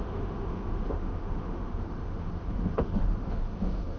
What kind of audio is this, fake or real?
fake